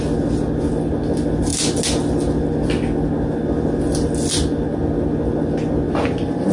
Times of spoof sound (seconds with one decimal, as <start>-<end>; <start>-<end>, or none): none